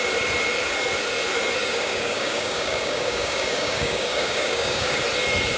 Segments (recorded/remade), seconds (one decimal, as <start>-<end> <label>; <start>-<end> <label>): 0.0-1.6 recorded; 1.6-5.0 remade; 5.0-5.6 recorded